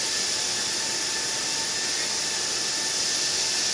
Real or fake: real